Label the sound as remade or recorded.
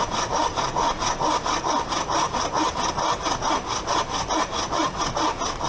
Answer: recorded